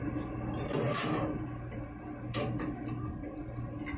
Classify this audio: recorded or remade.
recorded